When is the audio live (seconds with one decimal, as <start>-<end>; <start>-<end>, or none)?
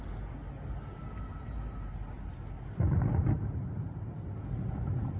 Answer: 0.0-5.2